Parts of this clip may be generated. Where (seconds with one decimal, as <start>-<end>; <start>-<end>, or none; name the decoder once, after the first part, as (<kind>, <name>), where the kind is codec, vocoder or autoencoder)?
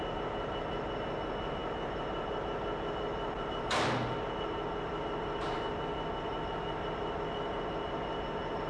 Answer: none